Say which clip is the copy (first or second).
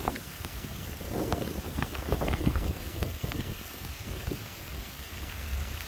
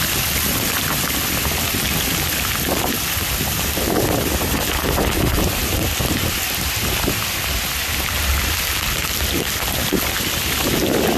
first